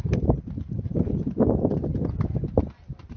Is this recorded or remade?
recorded